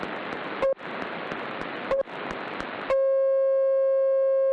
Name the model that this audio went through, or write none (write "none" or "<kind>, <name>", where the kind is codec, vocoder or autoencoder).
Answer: none